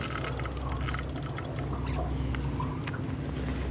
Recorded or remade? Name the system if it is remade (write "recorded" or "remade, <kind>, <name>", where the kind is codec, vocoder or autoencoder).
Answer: recorded